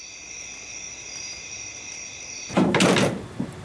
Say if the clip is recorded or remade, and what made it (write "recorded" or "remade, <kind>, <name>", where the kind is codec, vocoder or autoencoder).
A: recorded